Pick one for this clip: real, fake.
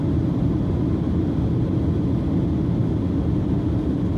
real